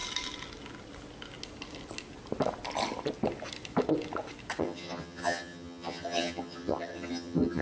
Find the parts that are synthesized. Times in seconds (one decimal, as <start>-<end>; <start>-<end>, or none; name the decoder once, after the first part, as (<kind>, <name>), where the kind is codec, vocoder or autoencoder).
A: 4.6-7.6 (vocoder, HiFi-GAN)